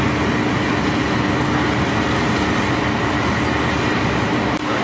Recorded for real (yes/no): yes